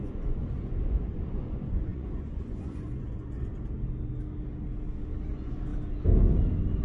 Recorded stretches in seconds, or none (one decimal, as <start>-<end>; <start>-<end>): 3.5-5.3; 5.7-6.8